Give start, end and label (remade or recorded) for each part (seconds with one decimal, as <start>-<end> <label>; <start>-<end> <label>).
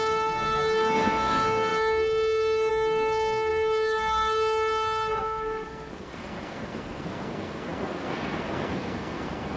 0.0-9.6 remade